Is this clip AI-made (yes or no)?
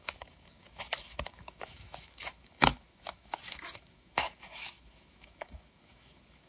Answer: yes